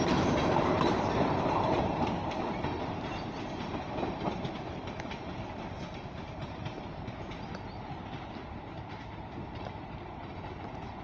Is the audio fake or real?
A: fake